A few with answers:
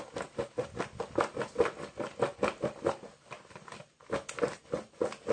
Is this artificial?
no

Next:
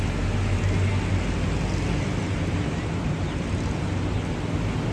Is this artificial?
no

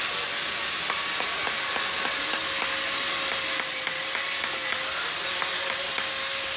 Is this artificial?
no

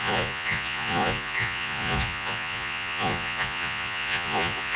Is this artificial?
yes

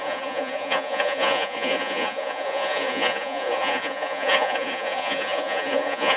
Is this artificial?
yes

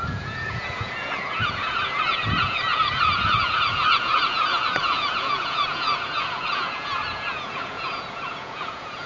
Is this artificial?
yes